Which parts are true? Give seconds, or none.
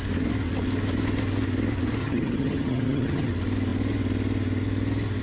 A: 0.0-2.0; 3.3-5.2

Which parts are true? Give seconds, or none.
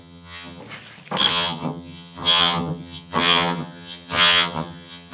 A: 0.6-1.3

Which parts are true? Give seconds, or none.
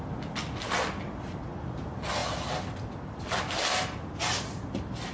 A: 0.0-5.1